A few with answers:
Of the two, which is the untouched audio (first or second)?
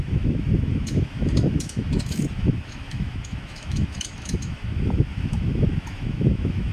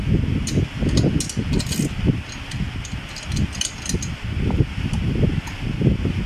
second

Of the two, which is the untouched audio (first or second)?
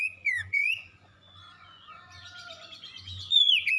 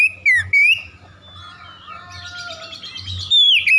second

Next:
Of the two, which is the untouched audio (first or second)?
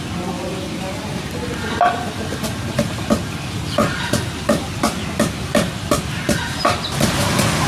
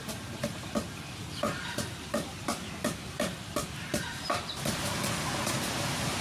first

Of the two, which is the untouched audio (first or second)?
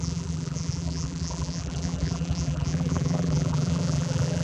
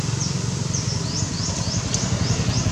second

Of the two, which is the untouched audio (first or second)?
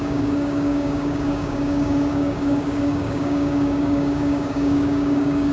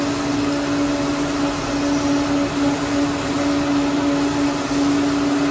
second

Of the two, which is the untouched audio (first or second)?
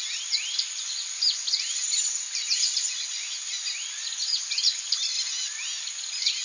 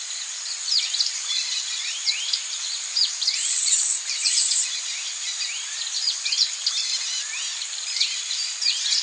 first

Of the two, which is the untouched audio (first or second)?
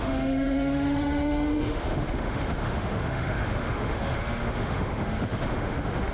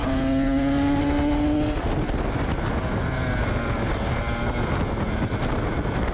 second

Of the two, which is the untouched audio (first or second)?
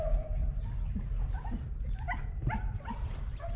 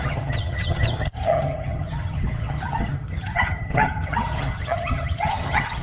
first